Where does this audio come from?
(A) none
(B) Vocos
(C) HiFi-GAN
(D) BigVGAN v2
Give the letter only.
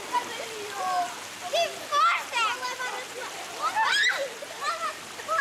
A